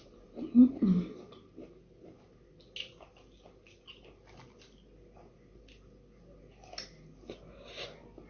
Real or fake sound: real